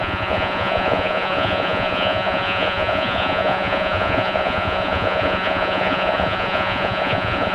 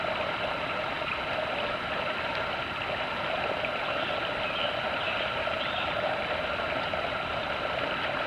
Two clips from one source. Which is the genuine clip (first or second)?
second